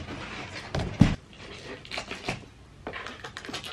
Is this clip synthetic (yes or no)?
no